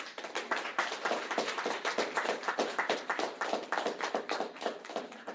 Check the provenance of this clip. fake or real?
fake